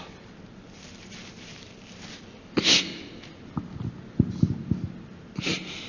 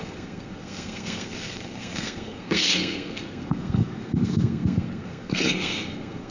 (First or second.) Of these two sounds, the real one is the first